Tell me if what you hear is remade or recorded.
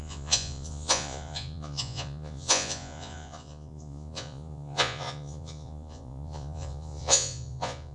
remade